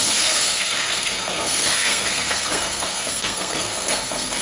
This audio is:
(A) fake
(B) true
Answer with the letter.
A